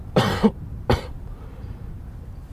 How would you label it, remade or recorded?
remade